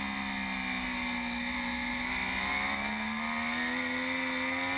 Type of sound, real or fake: real